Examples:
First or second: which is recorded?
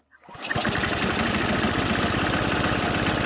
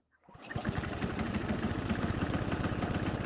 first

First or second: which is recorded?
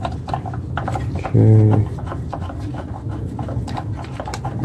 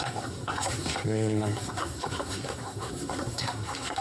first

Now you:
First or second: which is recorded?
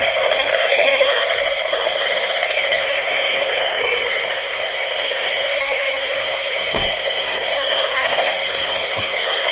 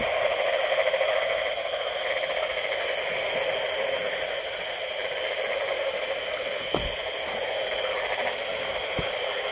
second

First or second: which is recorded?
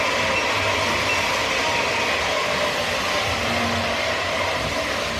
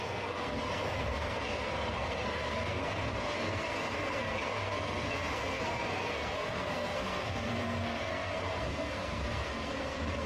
first